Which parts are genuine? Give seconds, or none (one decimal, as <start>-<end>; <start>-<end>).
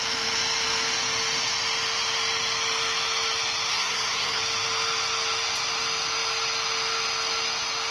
0.0-3.7; 4.4-7.9